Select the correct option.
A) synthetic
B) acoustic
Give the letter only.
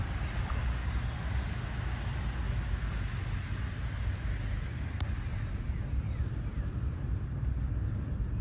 B